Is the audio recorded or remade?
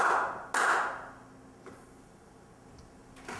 recorded